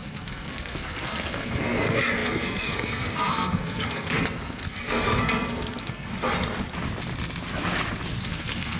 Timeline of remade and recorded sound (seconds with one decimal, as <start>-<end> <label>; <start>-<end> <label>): 0.0-6.1 remade; 6.1-8.2 recorded; 8.2-8.8 remade